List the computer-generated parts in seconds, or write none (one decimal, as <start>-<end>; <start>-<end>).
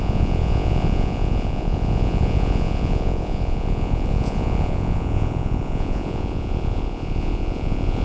0.0-8.0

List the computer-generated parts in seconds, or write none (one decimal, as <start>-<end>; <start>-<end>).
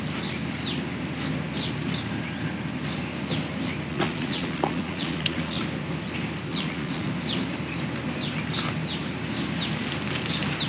3.9-5.6; 6.5-7.1